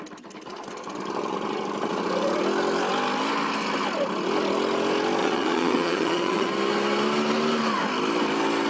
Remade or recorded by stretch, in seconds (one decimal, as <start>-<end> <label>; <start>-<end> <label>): 0.0-5.2 recorded; 5.2-6.5 remade; 6.5-8.7 recorded